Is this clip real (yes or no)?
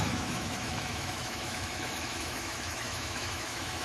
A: no